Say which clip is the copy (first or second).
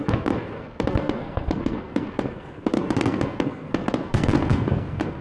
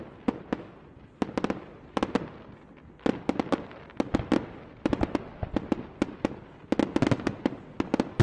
first